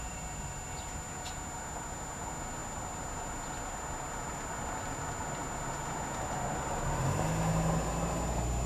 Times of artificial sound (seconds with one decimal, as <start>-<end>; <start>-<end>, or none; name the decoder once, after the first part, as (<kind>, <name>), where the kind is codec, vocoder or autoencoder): none